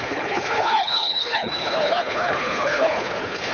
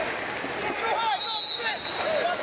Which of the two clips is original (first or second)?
second